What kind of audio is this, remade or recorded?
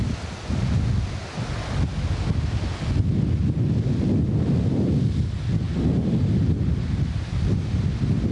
recorded